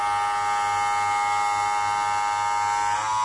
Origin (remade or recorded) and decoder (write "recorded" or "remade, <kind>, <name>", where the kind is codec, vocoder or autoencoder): recorded